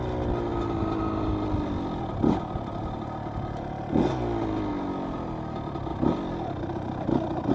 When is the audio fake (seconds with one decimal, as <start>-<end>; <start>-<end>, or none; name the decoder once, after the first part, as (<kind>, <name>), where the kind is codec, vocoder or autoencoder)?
none